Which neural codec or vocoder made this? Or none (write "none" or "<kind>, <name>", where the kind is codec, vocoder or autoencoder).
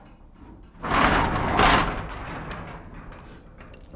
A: none